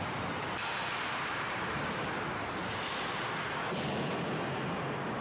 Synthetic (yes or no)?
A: no